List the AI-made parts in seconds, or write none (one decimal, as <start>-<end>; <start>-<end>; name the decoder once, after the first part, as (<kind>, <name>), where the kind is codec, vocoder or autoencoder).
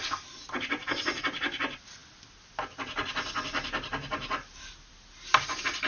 none